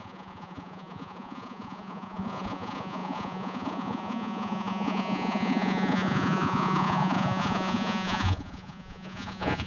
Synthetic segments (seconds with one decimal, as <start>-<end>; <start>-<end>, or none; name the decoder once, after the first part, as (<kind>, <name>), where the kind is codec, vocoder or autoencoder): 0.0-9.7 (vocoder, Vocos)